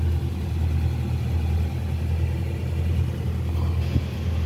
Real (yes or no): yes